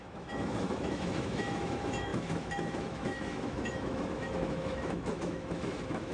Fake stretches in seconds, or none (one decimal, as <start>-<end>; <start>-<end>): 0.0-6.1